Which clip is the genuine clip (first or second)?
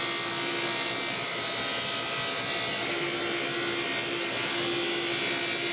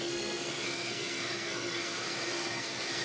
first